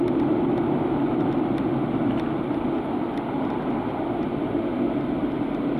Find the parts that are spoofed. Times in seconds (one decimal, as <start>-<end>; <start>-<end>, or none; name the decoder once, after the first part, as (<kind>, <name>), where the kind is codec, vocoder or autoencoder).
none